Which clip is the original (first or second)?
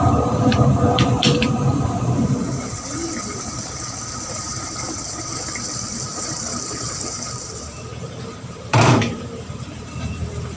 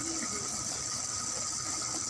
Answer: second